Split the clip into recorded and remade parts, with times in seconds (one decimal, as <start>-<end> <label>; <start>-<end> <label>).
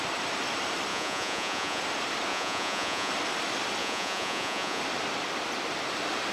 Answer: 0.0-0.9 recorded; 0.9-1.8 remade; 1.8-2.3 recorded; 2.3-3.1 remade; 3.1-3.8 recorded; 3.8-4.8 remade; 4.8-6.3 recorded